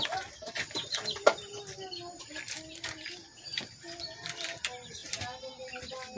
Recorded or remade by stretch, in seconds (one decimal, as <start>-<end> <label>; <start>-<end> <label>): 0.0-6.2 recorded